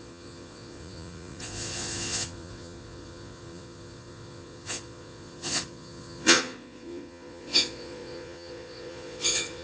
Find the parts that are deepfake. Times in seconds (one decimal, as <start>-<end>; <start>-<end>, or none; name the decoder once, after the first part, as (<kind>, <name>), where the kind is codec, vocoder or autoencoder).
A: 0.0-9.6 (vocoder, Vocos)